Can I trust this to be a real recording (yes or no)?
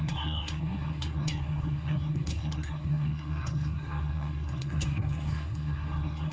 no